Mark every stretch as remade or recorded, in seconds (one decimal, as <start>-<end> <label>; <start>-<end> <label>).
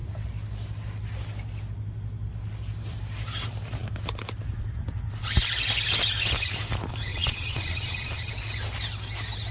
0.0-7.1 recorded; 7.1-8.3 remade; 8.3-9.5 recorded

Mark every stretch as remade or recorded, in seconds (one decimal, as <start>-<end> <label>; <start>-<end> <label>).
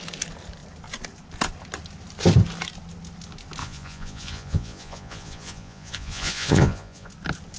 0.0-3.6 recorded; 3.6-7.1 remade; 7.1-7.6 recorded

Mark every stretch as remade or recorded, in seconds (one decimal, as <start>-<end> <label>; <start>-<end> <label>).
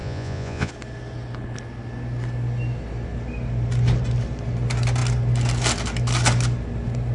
0.0-0.7 remade; 0.7-7.1 recorded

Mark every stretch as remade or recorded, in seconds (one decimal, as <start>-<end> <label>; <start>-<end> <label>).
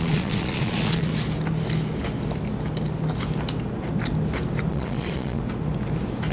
0.0-1.1 remade; 1.1-4.7 recorded; 4.7-5.4 remade; 5.4-6.3 recorded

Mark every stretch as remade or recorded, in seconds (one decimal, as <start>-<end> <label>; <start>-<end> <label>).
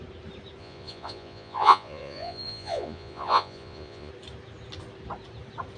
0.0-0.6 recorded; 0.6-4.1 remade; 4.1-5.8 recorded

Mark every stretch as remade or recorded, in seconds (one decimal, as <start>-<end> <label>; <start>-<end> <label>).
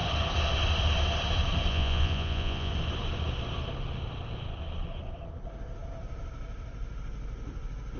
0.0-1.7 recorded; 1.7-2.7 remade; 2.7-8.0 recorded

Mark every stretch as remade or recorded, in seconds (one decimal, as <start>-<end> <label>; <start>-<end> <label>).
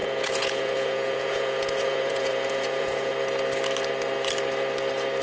0.0-3.1 remade; 3.1-5.2 recorded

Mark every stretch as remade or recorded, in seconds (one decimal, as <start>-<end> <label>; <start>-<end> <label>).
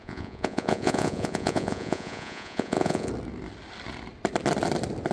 0.0-3.1 remade; 3.1-5.1 recorded